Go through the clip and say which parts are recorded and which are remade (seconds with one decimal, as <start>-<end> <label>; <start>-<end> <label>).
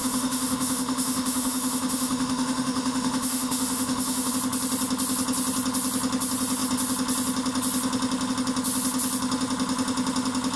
0.0-4.3 remade; 4.3-10.6 recorded